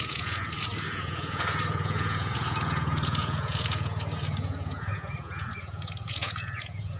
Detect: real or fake fake